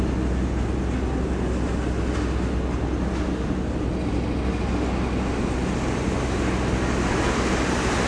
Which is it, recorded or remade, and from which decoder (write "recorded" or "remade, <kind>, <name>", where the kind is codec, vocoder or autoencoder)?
recorded